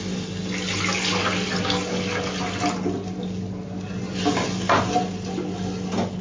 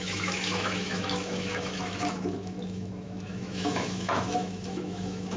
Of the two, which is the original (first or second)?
first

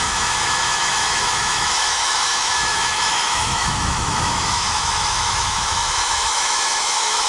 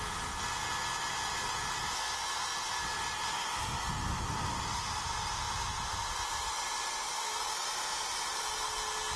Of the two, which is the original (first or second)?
second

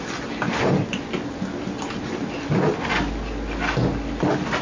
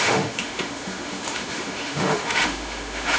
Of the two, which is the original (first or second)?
first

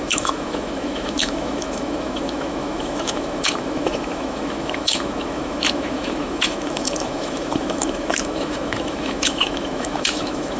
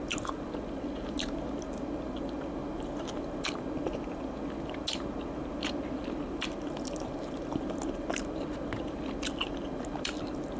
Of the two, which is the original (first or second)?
second